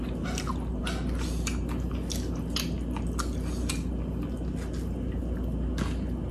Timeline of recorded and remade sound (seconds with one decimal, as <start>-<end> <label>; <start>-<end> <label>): 0.0-6.3 recorded